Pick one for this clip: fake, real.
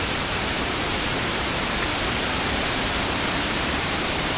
fake